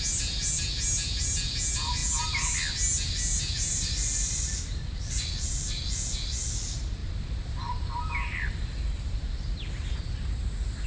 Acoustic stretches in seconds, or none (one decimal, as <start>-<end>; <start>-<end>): 0.0-10.9